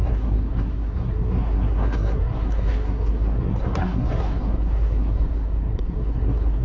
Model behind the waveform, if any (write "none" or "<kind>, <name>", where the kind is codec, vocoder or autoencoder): codec, SNAC